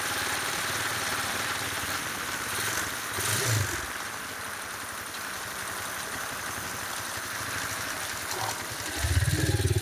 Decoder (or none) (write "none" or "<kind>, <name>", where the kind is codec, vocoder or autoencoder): none